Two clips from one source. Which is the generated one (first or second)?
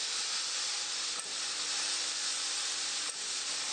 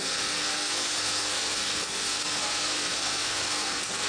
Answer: second